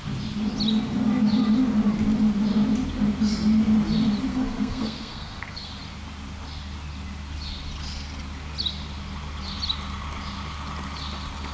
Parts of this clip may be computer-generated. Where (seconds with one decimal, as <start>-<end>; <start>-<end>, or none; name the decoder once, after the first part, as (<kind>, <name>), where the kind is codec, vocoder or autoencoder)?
4.3-5.7 (codec, SNAC)